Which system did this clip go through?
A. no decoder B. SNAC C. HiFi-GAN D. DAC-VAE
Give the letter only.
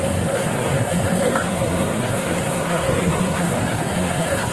B